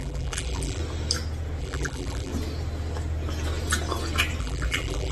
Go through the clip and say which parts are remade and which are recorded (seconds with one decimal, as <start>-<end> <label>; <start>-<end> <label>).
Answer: 0.0-0.8 remade; 0.8-1.6 recorded; 1.6-2.3 remade; 2.3-4.4 recorded; 4.4-5.1 remade